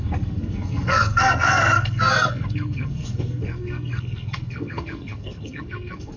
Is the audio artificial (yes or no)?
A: yes